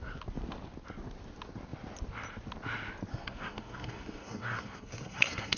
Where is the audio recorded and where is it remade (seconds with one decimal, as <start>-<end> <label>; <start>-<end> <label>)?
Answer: 0.0-3.1 recorded; 3.1-5.6 remade